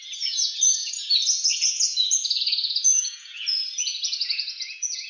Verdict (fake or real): fake